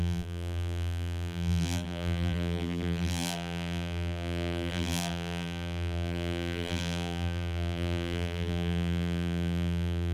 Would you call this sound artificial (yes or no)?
yes